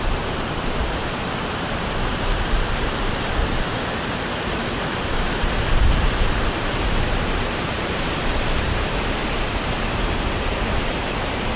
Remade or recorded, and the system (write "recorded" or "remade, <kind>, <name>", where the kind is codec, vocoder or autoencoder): remade, vocoder, BigVGAN v2